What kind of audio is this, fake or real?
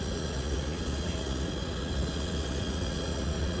fake